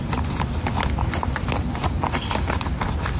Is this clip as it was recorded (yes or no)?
yes